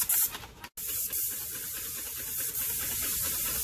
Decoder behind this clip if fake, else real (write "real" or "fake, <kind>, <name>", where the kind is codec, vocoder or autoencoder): real